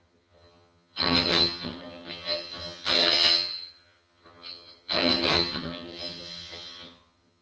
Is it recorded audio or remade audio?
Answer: remade